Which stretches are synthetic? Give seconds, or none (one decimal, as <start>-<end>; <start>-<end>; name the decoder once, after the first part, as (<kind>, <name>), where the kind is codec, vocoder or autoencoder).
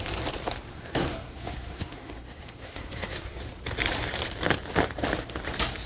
0.7-3.4 (codec, SNAC)